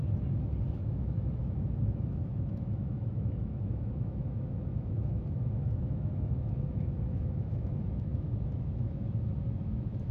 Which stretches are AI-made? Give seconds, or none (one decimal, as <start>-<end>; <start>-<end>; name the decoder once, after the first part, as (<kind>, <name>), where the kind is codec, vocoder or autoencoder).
0.7-10.1 (autoencoder, DAC-VAE)